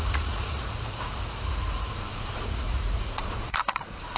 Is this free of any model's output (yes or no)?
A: no